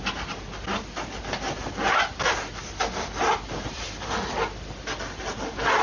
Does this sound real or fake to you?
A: real